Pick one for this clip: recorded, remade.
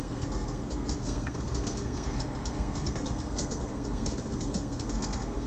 remade